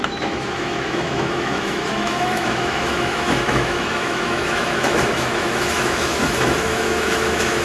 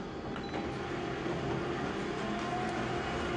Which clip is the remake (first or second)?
first